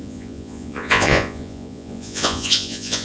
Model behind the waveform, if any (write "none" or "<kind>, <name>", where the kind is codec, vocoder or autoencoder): vocoder, Vocos